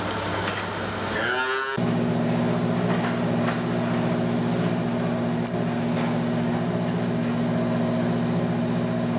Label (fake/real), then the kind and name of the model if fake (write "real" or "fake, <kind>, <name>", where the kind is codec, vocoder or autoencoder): real